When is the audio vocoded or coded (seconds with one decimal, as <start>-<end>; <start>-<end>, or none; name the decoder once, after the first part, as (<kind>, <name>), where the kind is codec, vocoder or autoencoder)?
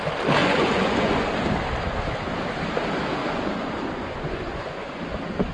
0.4-1.3 (vocoder, Vocos); 3.2-5.0